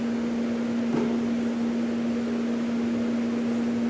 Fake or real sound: real